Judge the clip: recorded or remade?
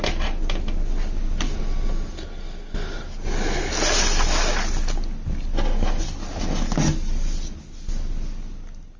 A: recorded